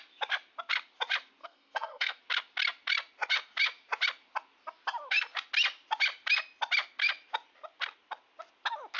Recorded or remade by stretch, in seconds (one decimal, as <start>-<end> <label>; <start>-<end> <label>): 0.0-1.4 recorded; 1.4-2.2 remade; 2.2-9.0 recorded